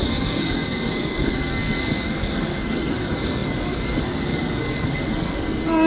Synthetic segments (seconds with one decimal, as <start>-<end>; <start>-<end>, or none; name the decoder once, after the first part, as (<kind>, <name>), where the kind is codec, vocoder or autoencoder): 0.0-5.9 (codec, SNAC)